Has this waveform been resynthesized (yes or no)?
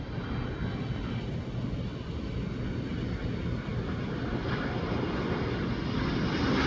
no